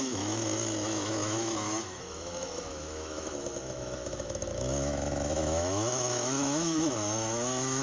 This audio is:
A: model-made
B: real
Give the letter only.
A